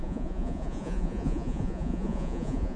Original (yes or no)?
no